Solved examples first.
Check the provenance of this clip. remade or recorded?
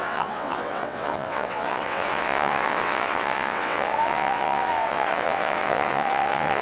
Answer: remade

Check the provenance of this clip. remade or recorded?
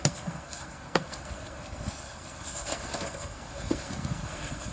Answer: remade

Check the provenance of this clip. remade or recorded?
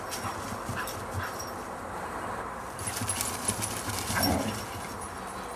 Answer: recorded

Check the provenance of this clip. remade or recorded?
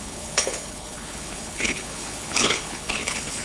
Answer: remade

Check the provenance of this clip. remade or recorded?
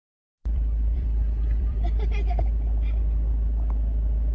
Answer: remade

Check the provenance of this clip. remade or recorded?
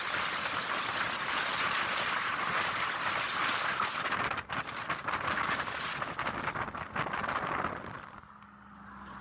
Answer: recorded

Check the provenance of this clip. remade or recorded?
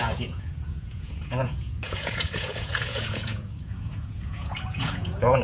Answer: remade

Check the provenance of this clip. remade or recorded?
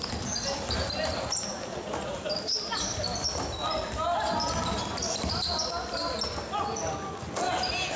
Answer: recorded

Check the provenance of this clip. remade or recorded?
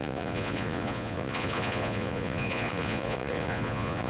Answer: remade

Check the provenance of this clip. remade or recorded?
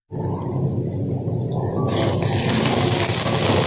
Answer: recorded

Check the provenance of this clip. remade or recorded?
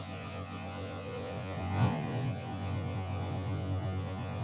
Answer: remade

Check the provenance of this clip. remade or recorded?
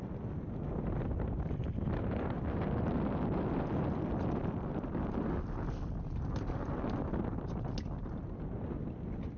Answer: recorded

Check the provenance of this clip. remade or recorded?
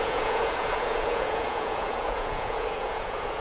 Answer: remade